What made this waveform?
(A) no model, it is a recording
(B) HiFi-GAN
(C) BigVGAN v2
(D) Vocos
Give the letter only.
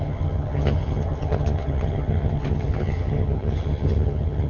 B